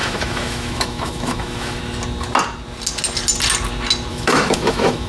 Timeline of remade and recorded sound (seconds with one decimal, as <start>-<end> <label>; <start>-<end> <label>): 0.0-1.8 remade; 1.8-4.1 recorded; 4.1-5.1 remade